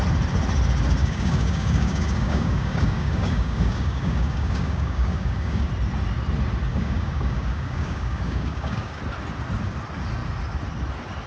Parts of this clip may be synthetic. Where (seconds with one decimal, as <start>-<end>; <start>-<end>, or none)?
1.0-5.7; 6.7-9.0